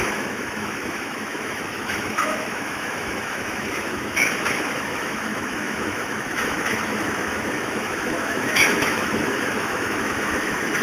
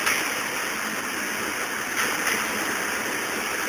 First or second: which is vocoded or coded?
first